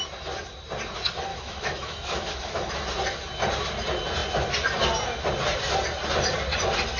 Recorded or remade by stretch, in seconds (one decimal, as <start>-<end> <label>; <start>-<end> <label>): 0.0-1.3 recorded; 1.3-2.7 remade; 2.7-7.0 recorded